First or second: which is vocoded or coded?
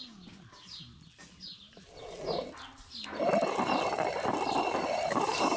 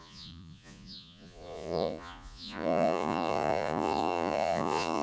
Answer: second